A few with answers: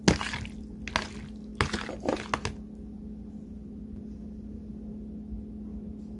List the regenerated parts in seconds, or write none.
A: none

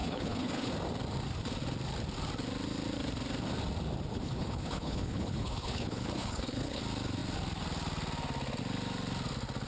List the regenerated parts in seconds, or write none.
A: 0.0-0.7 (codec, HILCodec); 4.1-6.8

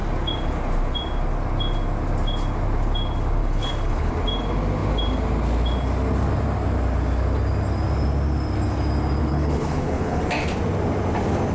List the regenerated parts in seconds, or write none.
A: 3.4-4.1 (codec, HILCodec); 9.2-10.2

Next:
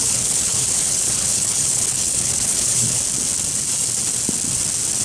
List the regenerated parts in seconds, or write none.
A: 0.0-3.0 (codec, HILCodec)

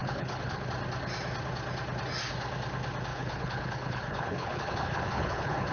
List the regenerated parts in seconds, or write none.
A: 0.0-0.7 (codec, HILCodec); 3.1-5.7

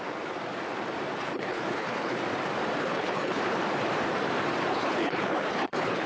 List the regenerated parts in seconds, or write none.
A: 1.2-2.2 (codec, HILCodec); 2.8-3.4; 4.7-6.1

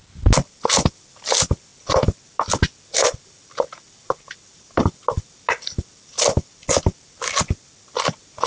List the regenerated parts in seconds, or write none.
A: none